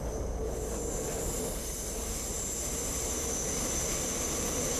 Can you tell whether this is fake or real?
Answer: real